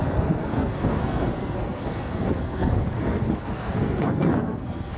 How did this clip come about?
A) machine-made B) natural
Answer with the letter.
A